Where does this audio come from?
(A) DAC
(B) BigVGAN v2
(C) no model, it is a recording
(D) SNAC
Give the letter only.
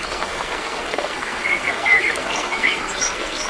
D